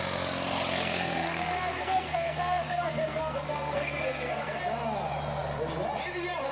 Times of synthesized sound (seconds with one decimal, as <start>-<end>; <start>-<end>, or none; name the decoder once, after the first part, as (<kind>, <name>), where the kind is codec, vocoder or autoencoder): 0.7-4.6 (codec, SNAC)